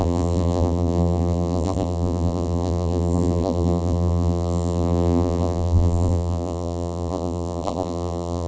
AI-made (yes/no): yes